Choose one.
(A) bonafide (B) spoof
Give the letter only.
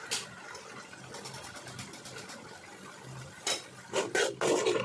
A